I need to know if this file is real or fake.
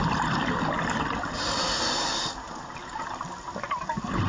real